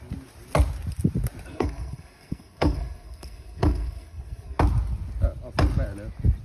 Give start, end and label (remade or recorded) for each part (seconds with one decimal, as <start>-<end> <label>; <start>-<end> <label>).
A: 0.0-1.5 recorded; 1.5-4.6 remade; 4.6-6.4 recorded